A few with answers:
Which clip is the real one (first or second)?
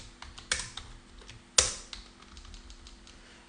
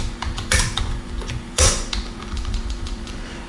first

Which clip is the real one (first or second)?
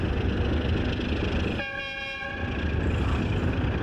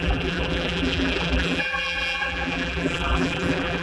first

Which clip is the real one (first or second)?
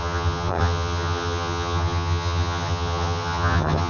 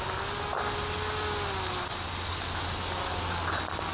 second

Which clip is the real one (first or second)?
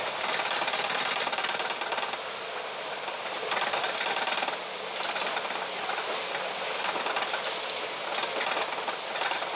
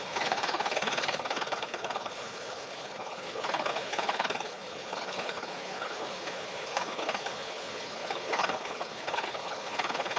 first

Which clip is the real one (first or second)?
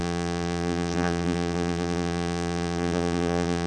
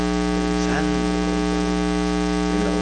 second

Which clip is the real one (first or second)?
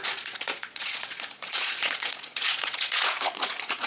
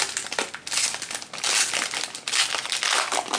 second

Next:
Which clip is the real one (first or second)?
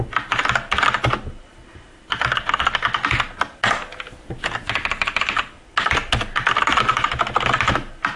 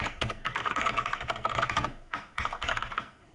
first